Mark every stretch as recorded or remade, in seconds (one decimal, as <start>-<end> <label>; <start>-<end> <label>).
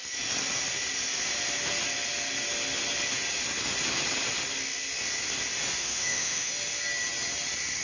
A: 0.0-5.8 recorded; 5.8-6.5 remade; 6.5-7.8 recorded